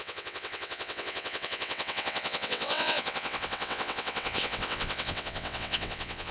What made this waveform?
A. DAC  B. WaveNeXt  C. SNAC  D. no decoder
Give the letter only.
B